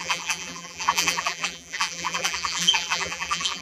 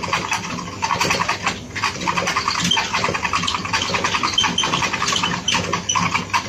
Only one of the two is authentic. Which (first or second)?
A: second